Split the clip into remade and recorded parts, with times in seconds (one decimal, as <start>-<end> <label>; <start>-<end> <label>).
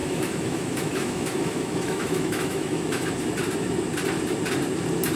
0.0-3.1 remade; 3.1-5.2 recorded